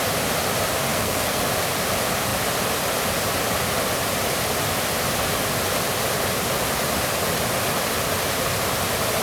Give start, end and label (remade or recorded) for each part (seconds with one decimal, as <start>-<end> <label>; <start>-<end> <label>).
0.0-0.9 recorded; 0.9-1.4 remade; 1.4-9.2 recorded